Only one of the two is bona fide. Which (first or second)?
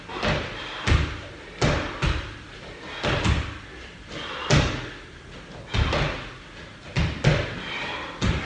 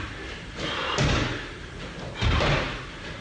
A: first